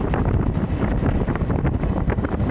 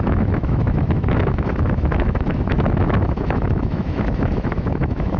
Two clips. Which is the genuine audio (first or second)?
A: first